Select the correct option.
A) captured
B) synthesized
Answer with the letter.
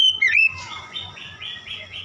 B